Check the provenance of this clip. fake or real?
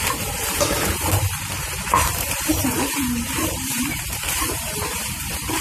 fake